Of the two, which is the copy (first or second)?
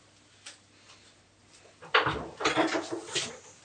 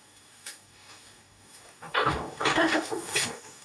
second